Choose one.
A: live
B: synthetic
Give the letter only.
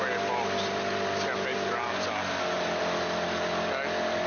A